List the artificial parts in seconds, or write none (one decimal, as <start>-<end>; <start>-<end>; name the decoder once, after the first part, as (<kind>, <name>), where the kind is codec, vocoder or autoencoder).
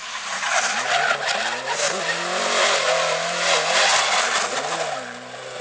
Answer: none